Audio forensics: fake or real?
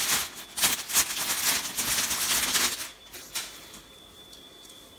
real